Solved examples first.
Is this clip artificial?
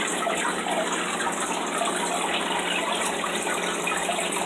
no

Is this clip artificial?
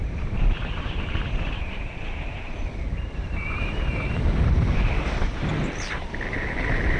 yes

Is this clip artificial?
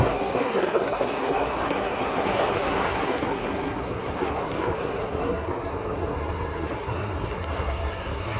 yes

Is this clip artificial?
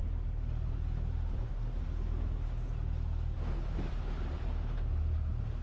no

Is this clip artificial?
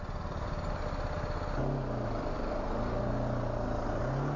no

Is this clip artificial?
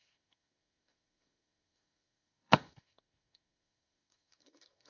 yes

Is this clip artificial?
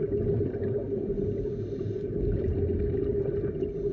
no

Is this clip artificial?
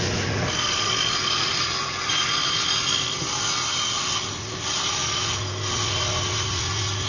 no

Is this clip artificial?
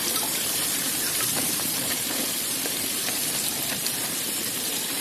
yes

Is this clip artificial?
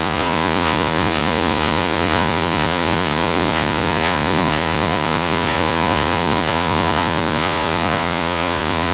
yes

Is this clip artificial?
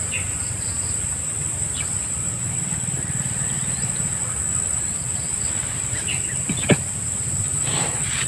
no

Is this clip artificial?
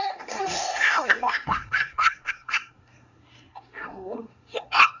yes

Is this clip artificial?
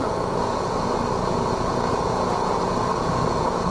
yes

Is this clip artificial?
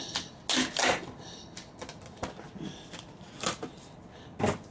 no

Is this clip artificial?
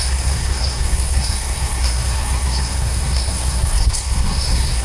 yes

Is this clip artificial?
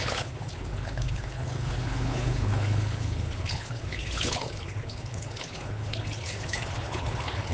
yes